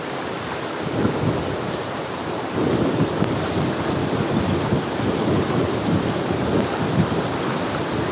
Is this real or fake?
real